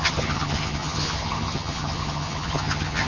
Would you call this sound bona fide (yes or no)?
no